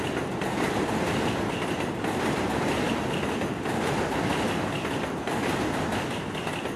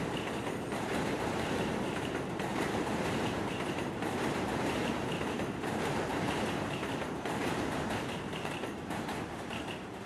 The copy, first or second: second